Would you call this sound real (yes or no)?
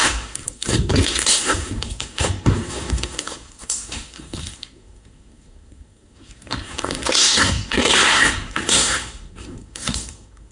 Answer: no